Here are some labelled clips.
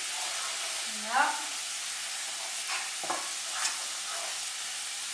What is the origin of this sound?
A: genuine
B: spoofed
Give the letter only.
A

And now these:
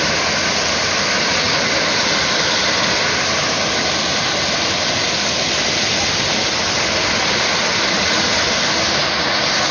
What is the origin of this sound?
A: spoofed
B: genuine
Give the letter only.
B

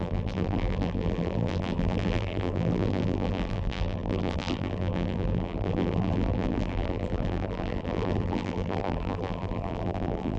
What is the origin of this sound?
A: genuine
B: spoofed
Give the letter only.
B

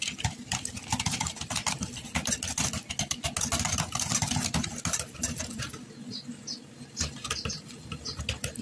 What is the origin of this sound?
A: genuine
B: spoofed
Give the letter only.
A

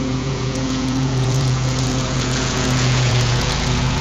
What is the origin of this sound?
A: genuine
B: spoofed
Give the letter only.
B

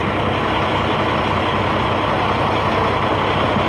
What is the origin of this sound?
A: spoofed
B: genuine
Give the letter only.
B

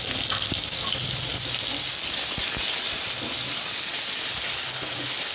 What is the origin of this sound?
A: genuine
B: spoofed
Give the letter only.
A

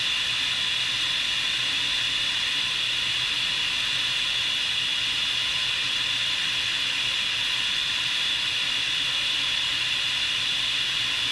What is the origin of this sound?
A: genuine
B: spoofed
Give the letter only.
A